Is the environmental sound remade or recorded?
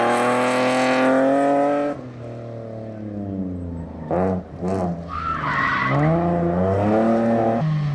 recorded